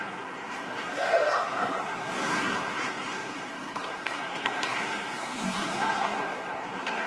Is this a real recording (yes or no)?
no